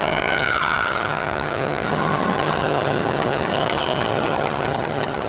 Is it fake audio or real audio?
fake